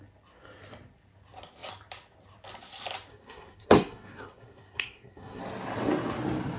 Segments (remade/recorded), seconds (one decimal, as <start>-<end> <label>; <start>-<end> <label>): 0.0-3.1 recorded; 3.1-5.4 remade; 5.4-6.6 recorded